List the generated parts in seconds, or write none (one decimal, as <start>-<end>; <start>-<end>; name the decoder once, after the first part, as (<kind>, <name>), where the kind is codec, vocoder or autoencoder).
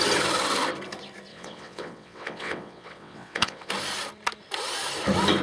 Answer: 1.3-3.7 (vocoder, WaveNeXt)